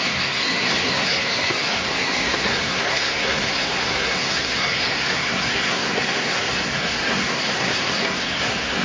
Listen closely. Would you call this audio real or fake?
fake